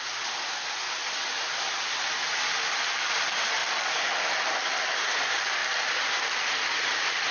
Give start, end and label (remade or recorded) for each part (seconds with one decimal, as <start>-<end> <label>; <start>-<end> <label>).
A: 0.0-7.3 recorded